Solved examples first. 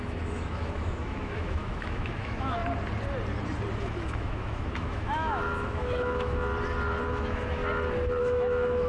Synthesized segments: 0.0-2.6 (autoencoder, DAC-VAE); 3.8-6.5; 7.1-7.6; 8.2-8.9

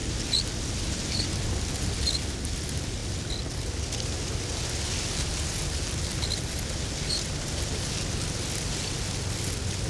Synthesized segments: none